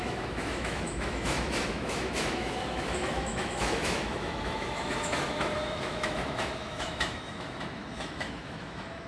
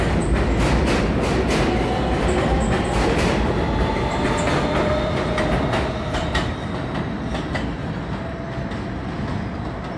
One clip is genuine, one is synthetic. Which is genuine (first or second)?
second